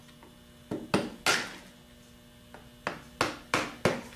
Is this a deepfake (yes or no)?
no